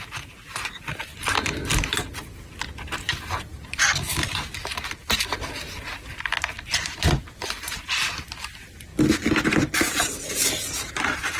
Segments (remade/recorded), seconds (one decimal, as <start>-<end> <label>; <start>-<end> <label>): 0.0-11.4 recorded